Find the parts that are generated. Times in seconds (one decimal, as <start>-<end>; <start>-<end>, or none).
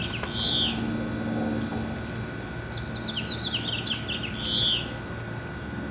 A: none